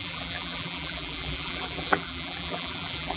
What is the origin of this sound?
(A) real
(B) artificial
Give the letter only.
B